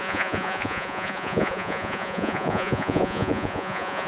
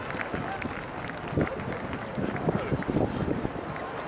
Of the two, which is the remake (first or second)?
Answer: first